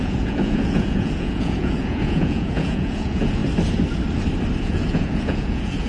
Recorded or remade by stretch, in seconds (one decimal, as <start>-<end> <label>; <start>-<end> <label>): 0.0-3.4 remade; 3.4-4.6 recorded; 4.6-5.9 remade